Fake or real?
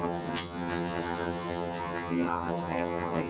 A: fake